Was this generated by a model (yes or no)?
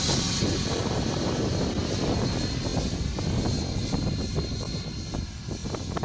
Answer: no